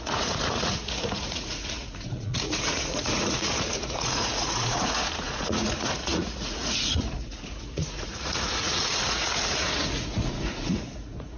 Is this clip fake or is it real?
fake